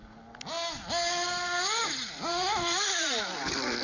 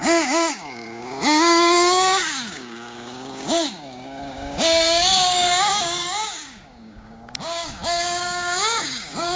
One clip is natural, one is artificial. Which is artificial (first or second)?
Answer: second